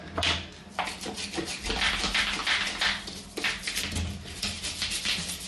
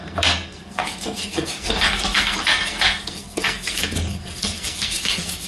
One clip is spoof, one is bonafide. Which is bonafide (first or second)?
first